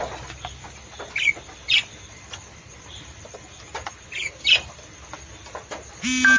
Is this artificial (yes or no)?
no